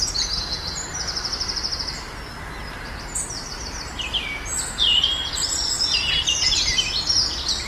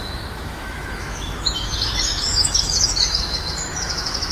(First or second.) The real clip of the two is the first